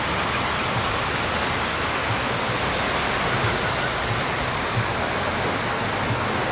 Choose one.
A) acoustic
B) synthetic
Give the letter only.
A